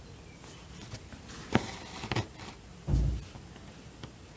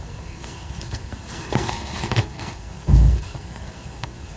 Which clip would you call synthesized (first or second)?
second